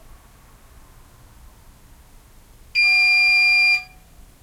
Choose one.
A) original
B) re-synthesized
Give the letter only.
A